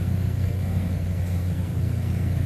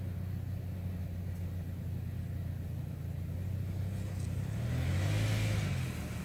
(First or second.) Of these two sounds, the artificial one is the first